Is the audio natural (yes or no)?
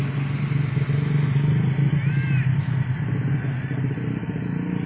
yes